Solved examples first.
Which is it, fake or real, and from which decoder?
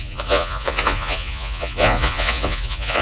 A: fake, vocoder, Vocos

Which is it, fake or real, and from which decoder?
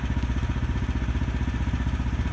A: real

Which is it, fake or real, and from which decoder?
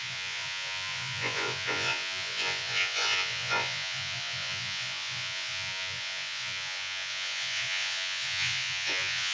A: fake, vocoder, Vocos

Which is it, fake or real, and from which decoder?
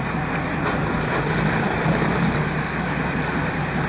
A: real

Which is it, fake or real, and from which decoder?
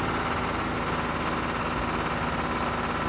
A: real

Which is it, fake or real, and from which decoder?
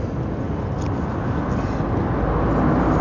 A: real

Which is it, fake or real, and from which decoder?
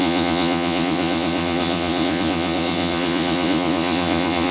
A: fake, vocoder, Vocos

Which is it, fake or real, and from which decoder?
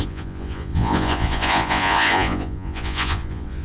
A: fake, vocoder, Vocos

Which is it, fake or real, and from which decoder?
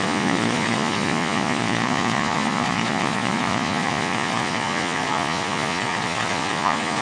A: fake, vocoder, Vocos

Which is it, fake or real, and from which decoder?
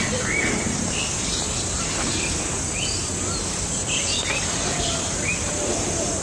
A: real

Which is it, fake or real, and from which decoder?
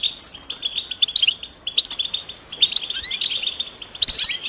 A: real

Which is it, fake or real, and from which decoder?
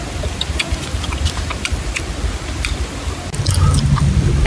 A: real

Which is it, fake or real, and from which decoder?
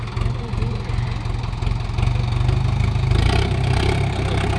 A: real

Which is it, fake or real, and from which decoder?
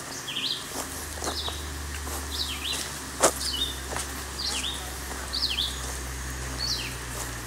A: real